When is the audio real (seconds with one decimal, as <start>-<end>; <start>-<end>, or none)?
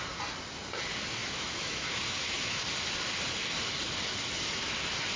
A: 0.0-1.2; 2.6-5.2